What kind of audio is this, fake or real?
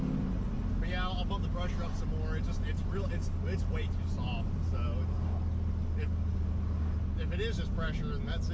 real